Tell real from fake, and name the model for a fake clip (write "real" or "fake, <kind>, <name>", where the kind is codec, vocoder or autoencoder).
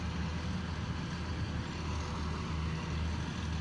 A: real